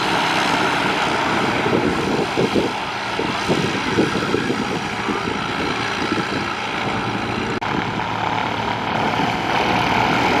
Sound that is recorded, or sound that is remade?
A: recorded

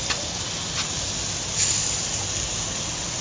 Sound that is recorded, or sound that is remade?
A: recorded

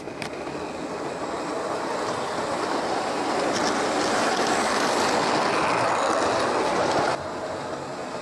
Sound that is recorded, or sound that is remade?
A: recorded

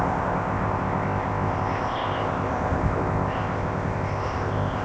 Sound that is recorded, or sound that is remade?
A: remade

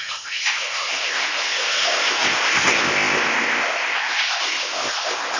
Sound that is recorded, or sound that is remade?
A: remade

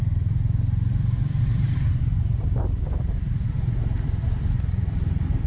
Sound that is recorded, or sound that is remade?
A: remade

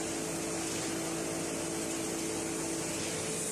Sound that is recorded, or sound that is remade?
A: recorded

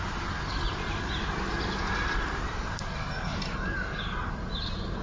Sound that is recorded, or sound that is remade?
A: recorded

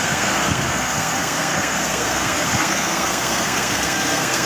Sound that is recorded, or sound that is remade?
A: remade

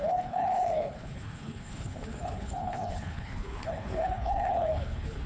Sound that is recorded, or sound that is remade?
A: remade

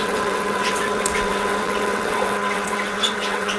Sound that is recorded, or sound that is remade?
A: remade